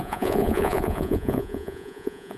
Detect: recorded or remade remade